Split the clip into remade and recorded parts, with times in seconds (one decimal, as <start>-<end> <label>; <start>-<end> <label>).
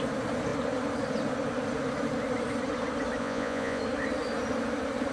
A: 0.0-3.2 recorded; 3.2-3.8 remade; 3.8-5.1 recorded